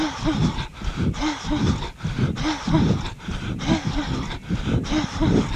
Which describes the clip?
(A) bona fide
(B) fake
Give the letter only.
A